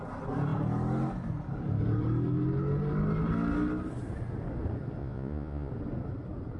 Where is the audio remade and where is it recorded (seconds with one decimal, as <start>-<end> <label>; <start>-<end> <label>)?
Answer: 0.0-5.0 recorded; 5.0-5.7 remade; 5.7-6.6 recorded